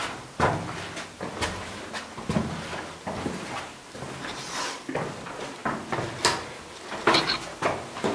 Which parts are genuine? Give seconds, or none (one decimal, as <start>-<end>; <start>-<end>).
0.0-8.1